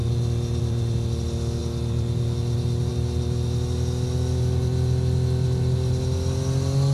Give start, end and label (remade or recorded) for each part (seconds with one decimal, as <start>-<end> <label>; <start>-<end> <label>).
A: 0.0-6.9 recorded